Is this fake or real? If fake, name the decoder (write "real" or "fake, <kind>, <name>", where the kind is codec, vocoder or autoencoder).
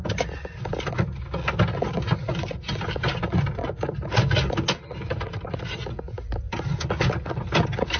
real